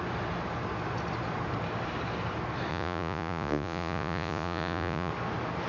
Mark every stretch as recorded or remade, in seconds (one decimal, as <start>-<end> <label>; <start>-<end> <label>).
0.0-2.7 recorded; 2.7-5.1 remade; 5.1-5.7 recorded